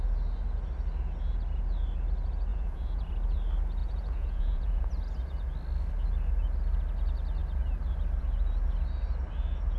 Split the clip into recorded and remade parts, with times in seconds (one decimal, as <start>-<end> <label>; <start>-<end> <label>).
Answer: 0.0-2.5 recorded; 2.5-3.1 remade; 3.1-3.8 recorded; 3.8-4.9 remade; 4.9-9.8 recorded